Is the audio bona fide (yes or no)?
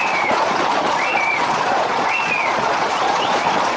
no